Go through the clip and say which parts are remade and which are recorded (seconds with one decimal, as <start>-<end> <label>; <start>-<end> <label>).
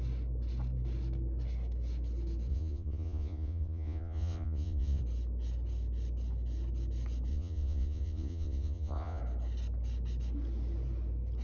0.0-2.5 recorded; 2.5-5.0 remade; 5.0-7.3 recorded; 7.3-9.2 remade; 9.2-11.4 recorded